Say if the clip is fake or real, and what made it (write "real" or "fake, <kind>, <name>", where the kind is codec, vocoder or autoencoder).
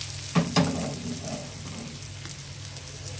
real